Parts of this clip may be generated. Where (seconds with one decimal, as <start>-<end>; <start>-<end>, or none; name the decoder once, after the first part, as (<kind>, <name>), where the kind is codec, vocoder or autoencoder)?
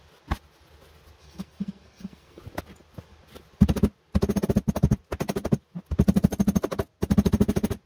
1.2-2.4 (codec, SNAC)